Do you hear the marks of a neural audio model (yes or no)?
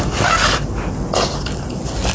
no